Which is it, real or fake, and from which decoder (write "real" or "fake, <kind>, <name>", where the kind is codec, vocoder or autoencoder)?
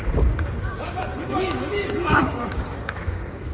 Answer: fake, codec, DAC